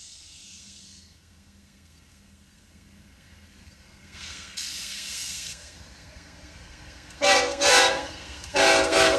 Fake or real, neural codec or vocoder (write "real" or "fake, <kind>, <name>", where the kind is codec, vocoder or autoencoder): fake, codec, SNAC